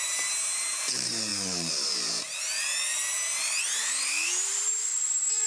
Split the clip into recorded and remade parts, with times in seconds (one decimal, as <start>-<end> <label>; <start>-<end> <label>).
0.0-5.5 remade